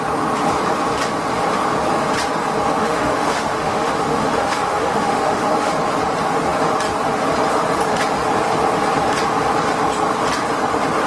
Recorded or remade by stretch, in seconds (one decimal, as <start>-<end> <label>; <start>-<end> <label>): 0.0-2.8 recorded; 2.8-5.7 remade; 5.7-11.1 recorded